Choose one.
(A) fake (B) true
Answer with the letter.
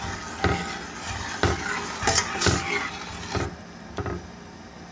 B